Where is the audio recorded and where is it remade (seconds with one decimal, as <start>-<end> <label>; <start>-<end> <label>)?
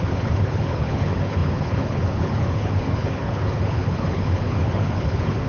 0.0-5.5 remade